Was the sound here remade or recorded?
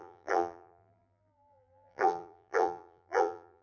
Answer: remade